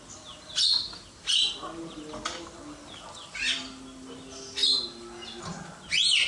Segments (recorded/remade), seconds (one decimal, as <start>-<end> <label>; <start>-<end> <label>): 0.0-6.3 recorded